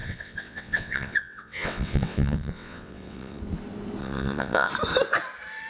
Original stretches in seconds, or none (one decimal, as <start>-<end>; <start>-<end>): 3.4-4.0; 4.7-5.7